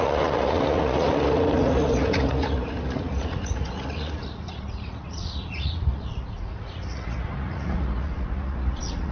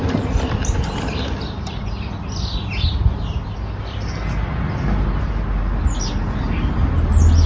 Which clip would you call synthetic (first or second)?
first